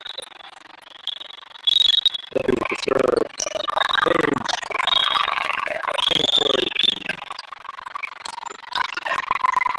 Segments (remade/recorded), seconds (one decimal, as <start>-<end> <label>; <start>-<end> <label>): 0.0-5.0 recorded; 5.0-5.9 remade; 5.9-9.8 recorded